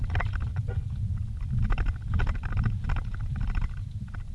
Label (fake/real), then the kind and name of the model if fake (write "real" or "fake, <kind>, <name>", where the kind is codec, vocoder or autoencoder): real